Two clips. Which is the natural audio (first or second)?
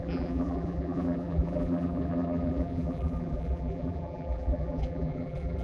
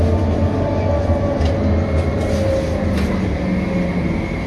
second